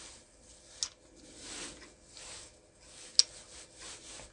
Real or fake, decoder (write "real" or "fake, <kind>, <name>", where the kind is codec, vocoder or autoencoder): real